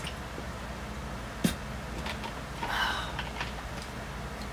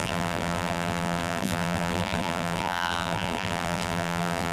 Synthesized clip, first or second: second